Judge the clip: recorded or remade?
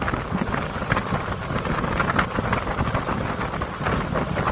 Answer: recorded